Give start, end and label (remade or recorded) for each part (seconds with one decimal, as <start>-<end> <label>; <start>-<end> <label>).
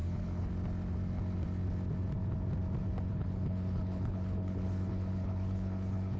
0.0-0.5 remade; 0.5-3.1 recorded; 3.1-6.2 remade